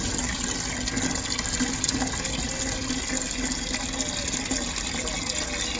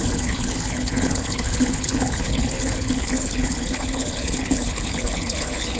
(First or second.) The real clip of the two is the first